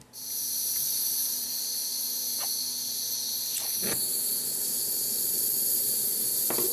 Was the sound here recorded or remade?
recorded